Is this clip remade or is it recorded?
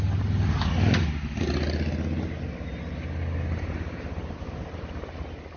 recorded